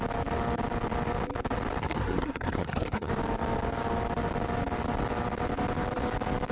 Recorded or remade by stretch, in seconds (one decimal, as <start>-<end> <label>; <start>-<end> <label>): 0.0-1.8 recorded; 1.8-3.1 remade; 3.1-6.5 recorded